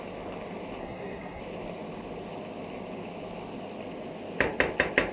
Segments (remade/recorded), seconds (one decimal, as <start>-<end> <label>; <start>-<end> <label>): 0.0-0.8 recorded; 0.8-1.4 remade; 1.4-5.1 recorded